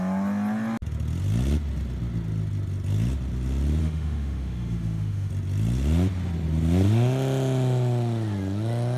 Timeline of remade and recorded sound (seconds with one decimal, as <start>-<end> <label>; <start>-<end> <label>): 0.0-3.8 recorded; 3.8-5.3 remade; 5.3-9.0 recorded